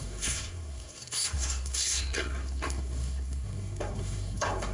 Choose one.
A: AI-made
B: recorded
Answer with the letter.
A